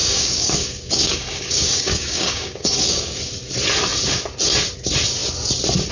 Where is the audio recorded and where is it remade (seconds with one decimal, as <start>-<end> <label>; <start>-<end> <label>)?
0.0-3.2 remade; 3.2-5.9 recorded